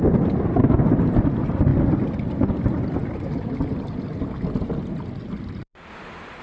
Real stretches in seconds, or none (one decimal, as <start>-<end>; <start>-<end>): 0.0-6.4